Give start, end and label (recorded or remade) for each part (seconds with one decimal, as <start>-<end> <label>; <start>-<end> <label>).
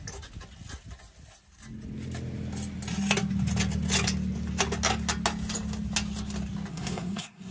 0.0-6.7 recorded; 6.7-7.5 remade